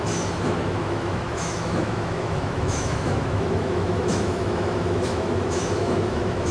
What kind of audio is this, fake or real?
fake